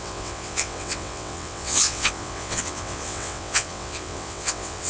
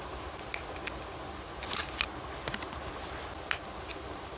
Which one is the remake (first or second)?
first